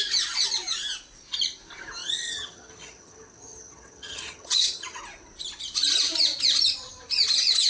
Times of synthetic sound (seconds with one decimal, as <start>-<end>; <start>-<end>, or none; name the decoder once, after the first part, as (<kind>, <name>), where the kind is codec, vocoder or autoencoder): 2.0-5.0 (vocoder, HiFi-GAN)

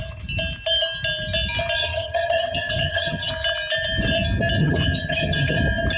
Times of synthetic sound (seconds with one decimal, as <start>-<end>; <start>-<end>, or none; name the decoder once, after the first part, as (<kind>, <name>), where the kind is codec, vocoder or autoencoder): 1.8-3.3 (vocoder, HiFi-GAN); 4.6-5.6

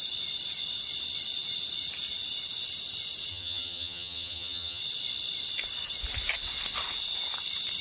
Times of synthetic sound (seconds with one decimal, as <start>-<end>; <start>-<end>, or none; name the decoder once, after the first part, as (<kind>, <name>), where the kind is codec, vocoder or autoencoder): 3.3-4.8 (vocoder, HiFi-GAN)

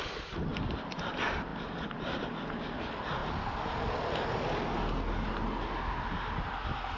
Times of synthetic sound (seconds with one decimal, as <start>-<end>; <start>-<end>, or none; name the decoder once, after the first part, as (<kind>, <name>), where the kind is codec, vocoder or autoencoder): none

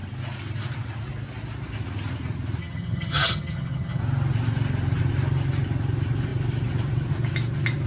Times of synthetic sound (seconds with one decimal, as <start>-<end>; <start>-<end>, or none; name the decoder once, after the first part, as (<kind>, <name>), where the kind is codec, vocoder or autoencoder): 2.6-4.0 (vocoder, HiFi-GAN)

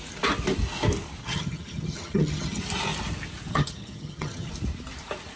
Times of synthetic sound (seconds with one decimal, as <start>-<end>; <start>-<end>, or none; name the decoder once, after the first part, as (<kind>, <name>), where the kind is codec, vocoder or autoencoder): 1.2-2.6 (vocoder, HiFi-GAN); 3.5-4.5

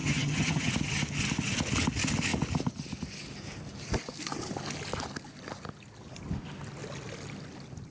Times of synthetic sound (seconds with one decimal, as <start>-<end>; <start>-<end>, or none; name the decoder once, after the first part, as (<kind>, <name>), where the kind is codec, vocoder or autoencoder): 0.0-0.7 (vocoder, HiFi-GAN)

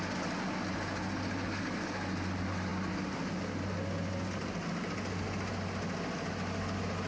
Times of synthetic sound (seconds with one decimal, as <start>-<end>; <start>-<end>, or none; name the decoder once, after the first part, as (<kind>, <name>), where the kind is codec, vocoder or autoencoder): none